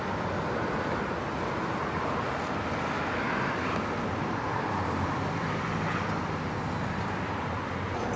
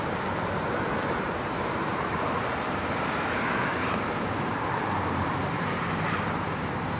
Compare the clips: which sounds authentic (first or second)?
first